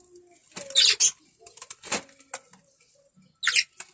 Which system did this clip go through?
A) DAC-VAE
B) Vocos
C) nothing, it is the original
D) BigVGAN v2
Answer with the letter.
C